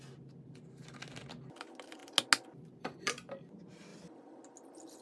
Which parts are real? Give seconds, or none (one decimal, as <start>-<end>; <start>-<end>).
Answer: 0.0-5.0

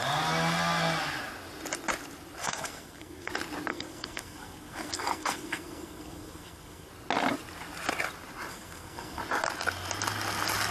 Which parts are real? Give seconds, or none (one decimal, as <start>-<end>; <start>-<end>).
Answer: 0.0-2.4; 3.3-3.7; 6.9-8.5; 9.2-10.7

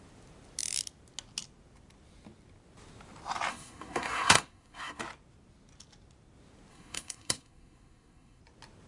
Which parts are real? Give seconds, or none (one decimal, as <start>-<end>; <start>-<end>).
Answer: 0.0-3.5; 5.0-6.7; 8.4-8.9